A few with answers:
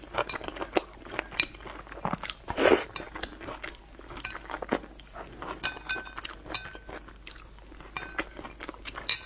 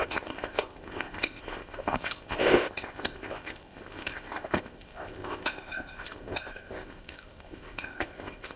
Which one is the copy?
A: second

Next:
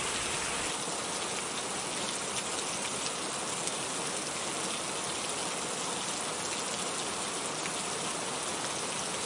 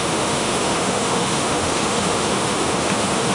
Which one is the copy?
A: second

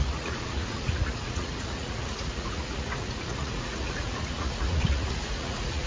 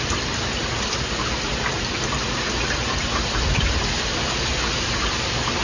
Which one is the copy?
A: first